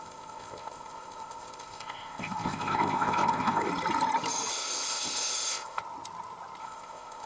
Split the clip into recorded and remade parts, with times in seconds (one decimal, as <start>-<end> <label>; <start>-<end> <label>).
0.0-3.7 remade; 3.7-4.5 recorded; 4.5-5.8 remade; 5.8-6.6 recorded; 6.6-7.3 remade